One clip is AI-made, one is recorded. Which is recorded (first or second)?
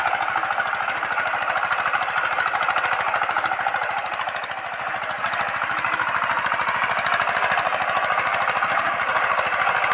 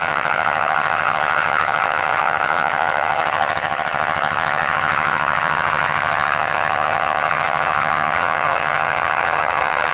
first